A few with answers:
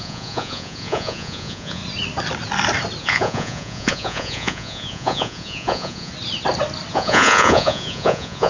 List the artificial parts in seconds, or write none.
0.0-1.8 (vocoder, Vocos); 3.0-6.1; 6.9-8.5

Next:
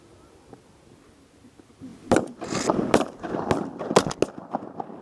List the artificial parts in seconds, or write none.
none

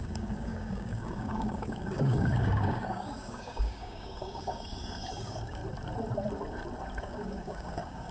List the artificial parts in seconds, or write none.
0.0-5.6 (codec, DAC); 7.0-8.1

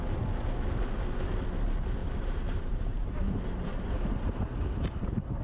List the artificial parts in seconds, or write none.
2.0-5.4 (vocoder, BigVGAN v2)

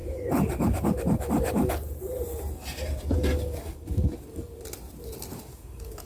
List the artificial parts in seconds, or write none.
0.0-1.7 (codec, DAC); 3.3-4.6; 5.3-6.1